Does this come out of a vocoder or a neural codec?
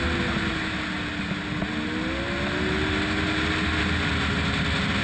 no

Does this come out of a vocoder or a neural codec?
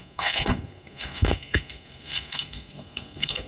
yes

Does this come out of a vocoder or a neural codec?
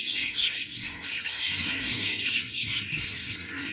yes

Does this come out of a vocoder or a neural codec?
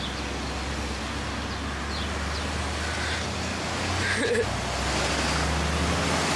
no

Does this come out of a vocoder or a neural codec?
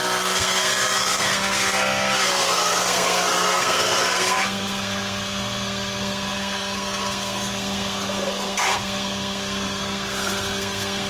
yes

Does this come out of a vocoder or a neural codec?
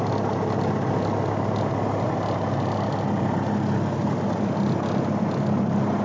no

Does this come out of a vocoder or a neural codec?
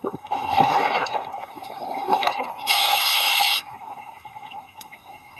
yes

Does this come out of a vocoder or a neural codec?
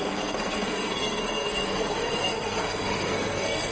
yes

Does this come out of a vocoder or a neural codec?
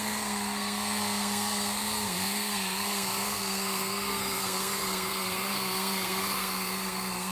yes